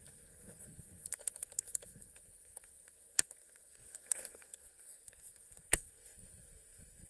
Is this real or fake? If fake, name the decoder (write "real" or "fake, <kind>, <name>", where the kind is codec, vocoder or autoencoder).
fake, codec, SNAC